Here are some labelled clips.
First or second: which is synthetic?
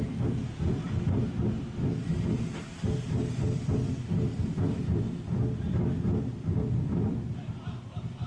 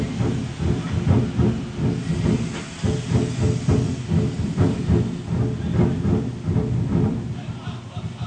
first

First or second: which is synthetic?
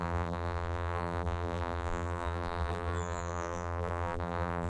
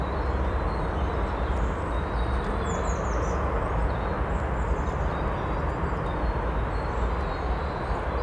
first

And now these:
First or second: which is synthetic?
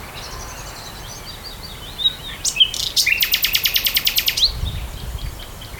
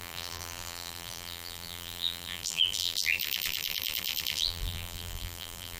second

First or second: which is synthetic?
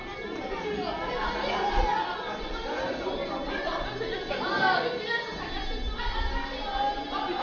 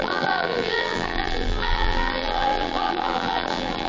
second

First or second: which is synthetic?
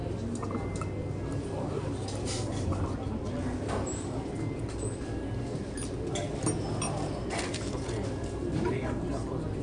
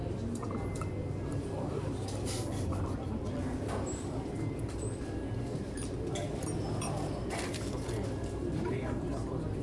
second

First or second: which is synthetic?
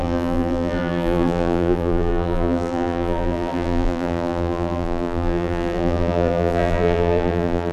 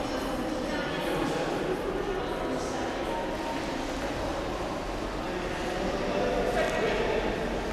first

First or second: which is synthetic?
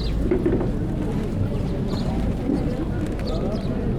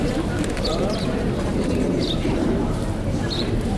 second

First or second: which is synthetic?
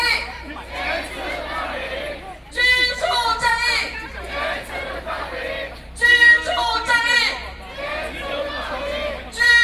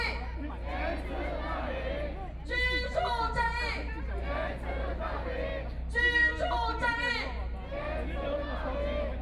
first